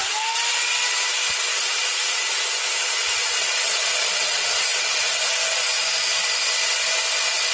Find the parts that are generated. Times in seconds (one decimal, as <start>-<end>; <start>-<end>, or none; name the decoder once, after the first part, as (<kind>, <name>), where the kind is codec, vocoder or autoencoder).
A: 1.5-2.4 (vocoder, Vocos); 3.2-5.3